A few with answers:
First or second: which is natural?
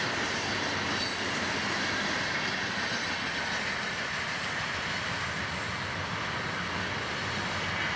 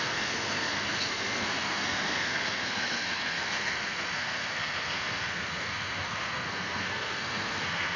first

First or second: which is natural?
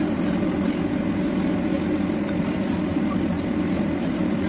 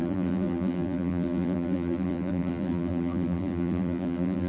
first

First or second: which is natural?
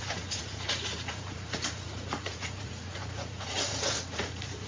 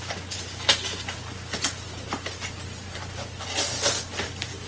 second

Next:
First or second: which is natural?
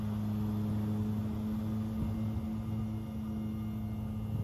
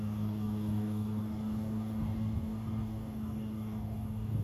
first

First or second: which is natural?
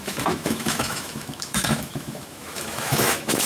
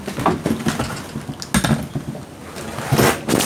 second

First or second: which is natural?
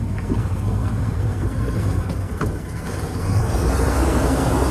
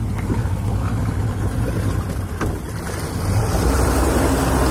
second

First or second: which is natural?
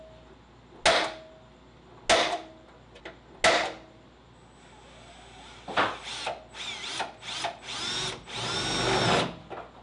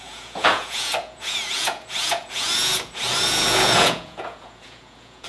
first